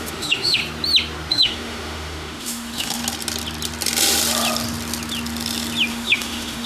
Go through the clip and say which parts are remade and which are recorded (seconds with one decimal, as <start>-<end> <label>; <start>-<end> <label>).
0.0-0.6 remade; 0.6-1.3 recorded; 1.3-3.0 remade; 3.0-5.9 recorded; 5.9-6.7 remade